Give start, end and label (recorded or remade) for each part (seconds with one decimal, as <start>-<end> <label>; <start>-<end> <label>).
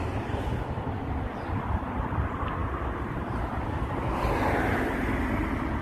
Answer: 0.0-5.8 recorded